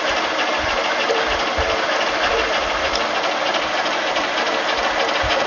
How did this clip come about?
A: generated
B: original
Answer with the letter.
B